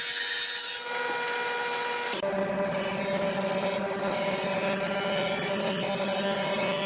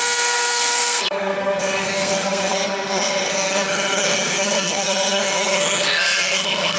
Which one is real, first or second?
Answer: first